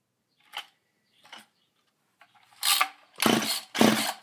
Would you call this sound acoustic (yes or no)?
yes